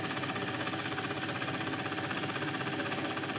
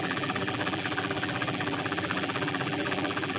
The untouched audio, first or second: first